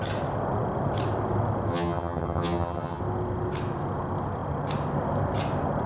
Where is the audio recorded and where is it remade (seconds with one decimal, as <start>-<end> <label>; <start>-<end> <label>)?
0.0-1.7 recorded; 1.7-3.0 remade; 3.0-5.9 recorded